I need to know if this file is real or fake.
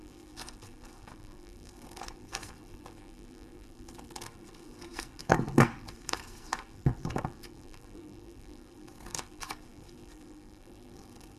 fake